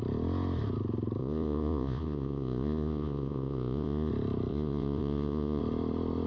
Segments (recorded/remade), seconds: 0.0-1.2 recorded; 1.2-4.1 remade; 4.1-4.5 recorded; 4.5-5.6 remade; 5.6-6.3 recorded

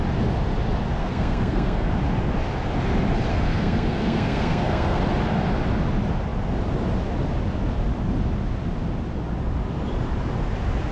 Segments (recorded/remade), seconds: 0.0-1.0 recorded; 1.0-1.9 remade; 1.9-3.3 recorded; 3.3-5.0 remade; 5.0-10.9 recorded

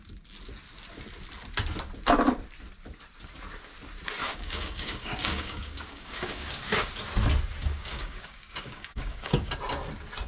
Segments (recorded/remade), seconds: 0.0-4.2 recorded; 4.2-6.9 remade; 6.9-7.6 recorded; 7.6-9.5 remade; 9.5-10.3 recorded

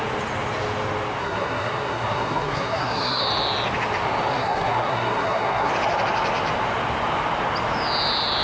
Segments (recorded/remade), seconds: 0.0-1.2 recorded; 1.2-3.2 remade; 3.2-4.3 recorded; 4.3-5.7 remade; 5.7-8.4 recorded

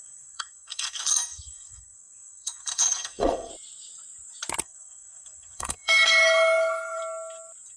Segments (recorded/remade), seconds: 0.0-3.5 remade; 3.5-4.6 recorded; 4.6-7.0 remade; 7.0-7.8 recorded

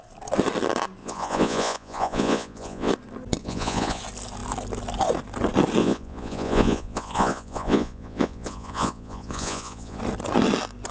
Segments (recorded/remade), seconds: 0.0-1.0 recorded; 1.0-2.9 remade; 2.9-3.4 recorded; 3.4-4.0 remade; 4.0-5.8 recorded; 5.8-10.0 remade; 10.0-10.9 recorded

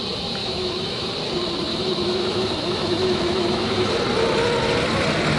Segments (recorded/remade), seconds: 0.0-0.4 recorded; 0.4-1.1 remade; 1.1-1.7 recorded; 1.7-3.9 remade; 3.9-5.4 recorded